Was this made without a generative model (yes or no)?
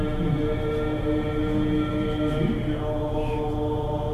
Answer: yes